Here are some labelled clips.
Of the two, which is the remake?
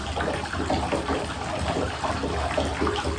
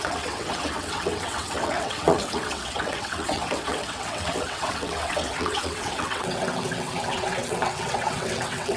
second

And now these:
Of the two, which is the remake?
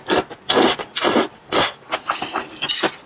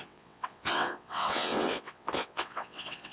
second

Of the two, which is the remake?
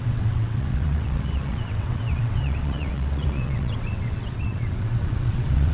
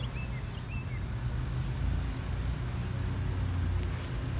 first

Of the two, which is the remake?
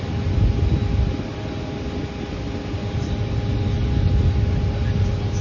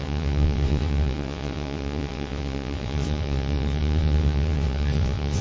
second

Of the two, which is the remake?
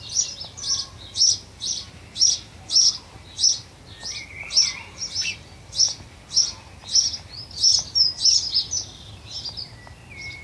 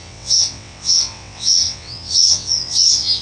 second